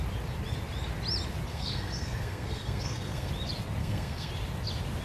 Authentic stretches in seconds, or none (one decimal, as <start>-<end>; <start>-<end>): 0.0-1.5; 3.3-3.8; 4.3-5.0